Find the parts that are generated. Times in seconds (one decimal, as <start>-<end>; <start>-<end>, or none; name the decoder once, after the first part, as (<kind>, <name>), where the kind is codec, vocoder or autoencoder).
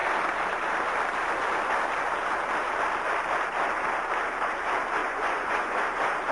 5.0-5.8 (vocoder, Vocos)